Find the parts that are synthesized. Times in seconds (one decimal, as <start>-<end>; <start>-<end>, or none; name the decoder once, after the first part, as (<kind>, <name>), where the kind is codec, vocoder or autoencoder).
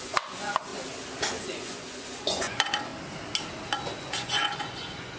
0.0-0.7 (vocoder, Vocos); 1.3-2.9; 4.0-5.2